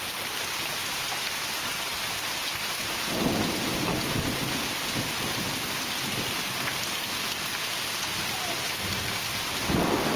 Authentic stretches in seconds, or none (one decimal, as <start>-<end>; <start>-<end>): 0.0-0.8; 1.3-7.7; 9.6-10.2